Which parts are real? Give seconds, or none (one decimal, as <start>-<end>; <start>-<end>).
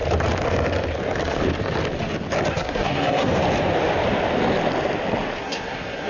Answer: 0.0-2.5; 3.3-5.4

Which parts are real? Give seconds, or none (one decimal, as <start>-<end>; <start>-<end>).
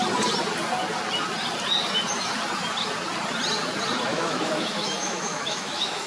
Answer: 0.0-4.1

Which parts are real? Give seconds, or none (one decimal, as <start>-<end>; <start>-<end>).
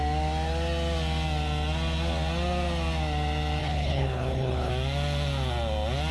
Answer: 0.0-3.6; 4.7-6.1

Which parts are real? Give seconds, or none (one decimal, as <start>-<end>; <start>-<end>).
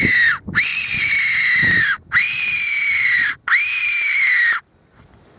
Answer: 0.0-0.7; 3.3-3.8; 4.6-5.4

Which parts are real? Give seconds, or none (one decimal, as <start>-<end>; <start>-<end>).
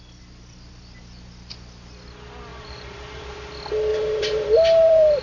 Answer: 0.0-2.5; 3.2-3.9